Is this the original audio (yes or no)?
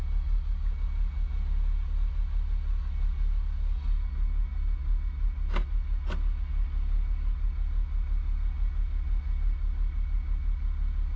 yes